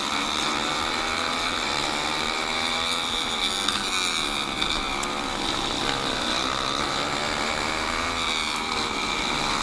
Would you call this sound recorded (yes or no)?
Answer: yes